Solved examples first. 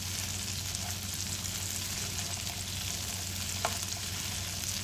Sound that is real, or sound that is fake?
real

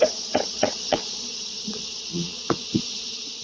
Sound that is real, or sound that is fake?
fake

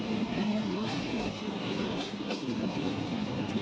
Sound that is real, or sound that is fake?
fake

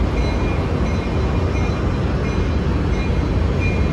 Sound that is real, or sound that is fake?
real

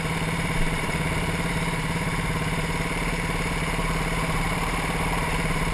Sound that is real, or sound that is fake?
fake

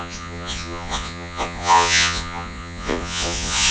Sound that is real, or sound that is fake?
fake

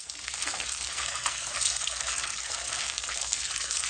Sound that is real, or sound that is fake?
fake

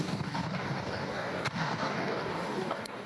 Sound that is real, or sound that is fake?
fake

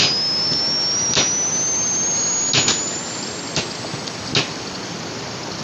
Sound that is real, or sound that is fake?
real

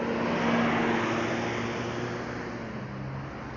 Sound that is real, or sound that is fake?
real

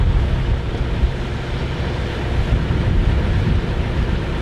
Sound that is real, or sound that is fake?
real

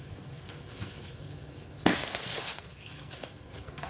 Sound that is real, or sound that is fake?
fake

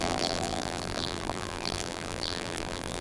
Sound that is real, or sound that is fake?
fake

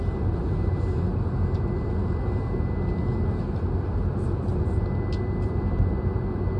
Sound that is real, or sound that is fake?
real